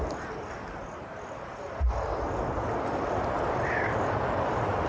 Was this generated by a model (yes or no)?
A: no